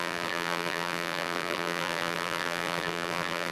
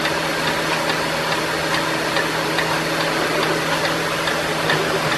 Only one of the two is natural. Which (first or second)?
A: second